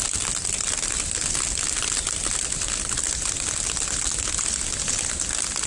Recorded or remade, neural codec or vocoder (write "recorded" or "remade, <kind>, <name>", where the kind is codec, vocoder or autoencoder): recorded